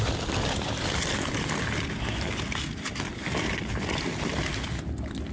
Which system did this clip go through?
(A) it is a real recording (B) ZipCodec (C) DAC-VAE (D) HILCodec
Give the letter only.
A